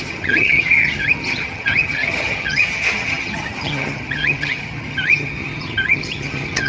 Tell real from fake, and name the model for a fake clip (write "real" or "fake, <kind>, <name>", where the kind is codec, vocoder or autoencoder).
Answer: fake, vocoder, HiFi-GAN